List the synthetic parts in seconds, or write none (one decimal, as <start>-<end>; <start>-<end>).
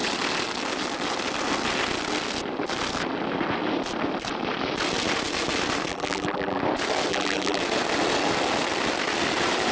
5.9-6.6; 7.1-7.6